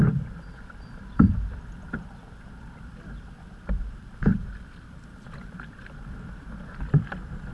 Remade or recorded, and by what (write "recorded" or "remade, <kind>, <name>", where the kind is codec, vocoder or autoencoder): remade, vocoder, BigVGAN v2